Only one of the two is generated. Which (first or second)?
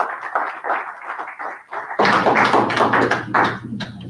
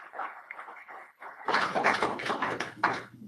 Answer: second